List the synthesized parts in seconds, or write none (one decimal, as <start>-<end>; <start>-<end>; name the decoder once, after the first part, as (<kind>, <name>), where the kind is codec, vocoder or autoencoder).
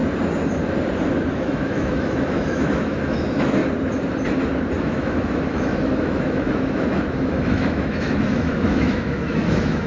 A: 1.3-3.6 (autoencoder, DAC-VAE); 4.8-9.9